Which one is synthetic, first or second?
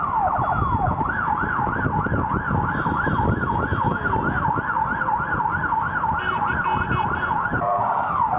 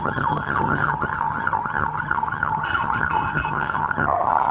second